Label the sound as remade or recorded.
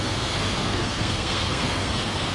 remade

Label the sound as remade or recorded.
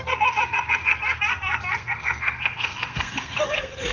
remade